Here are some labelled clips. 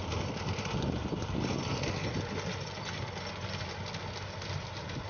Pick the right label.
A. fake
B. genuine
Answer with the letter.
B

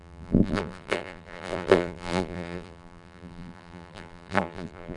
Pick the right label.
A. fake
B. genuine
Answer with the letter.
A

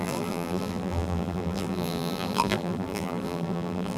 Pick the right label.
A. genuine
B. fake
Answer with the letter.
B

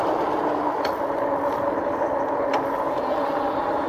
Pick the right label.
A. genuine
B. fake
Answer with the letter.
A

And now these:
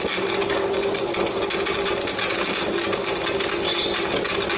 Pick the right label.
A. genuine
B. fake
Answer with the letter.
A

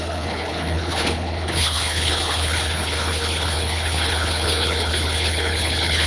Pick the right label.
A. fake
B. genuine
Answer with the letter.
A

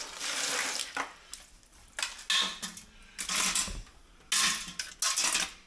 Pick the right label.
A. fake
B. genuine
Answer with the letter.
B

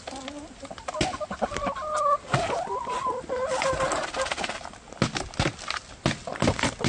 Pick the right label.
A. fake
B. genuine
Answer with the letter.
B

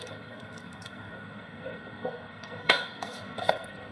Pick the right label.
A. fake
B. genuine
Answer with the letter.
A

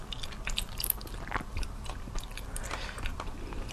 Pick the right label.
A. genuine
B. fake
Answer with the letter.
A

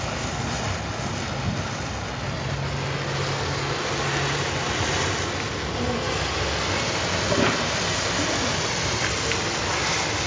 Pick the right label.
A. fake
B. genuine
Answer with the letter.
B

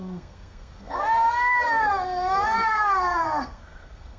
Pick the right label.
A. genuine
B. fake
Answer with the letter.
B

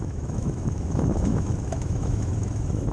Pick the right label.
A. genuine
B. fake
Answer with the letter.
B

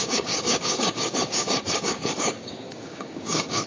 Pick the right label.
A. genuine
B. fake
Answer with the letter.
B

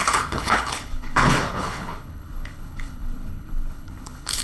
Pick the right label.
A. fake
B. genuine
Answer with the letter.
A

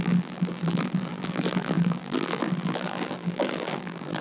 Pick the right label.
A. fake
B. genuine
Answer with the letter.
A